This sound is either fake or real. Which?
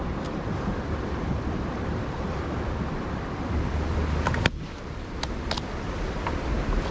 fake